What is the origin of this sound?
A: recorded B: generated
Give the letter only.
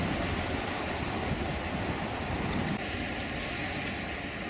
A